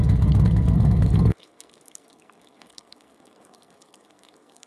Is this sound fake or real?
fake